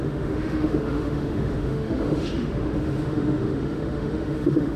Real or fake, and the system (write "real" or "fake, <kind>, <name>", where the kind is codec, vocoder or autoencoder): fake, autoencoder, DAC-VAE